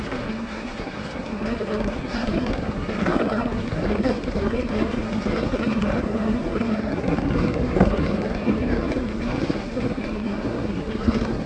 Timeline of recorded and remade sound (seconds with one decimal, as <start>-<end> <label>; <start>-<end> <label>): 0.0-11.5 remade